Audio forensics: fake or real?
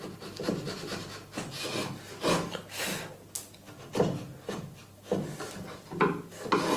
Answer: real